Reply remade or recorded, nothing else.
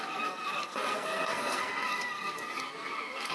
remade